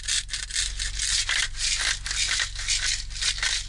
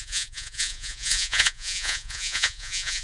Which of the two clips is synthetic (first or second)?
second